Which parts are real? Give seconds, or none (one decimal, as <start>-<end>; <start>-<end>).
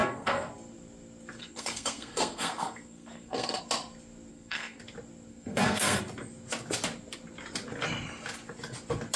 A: 0.5-1.4; 3.6-4.3; 4.8-5.3; 6.0-9.2